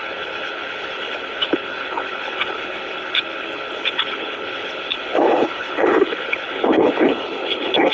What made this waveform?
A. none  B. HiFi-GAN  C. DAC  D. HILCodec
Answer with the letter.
D